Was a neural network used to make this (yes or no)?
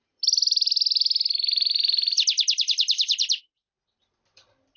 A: no